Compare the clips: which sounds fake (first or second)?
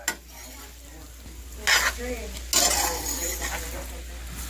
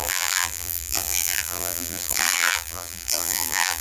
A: second